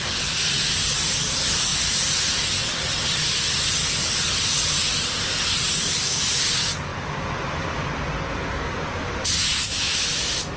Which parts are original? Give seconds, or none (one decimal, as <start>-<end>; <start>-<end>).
0.0-9.5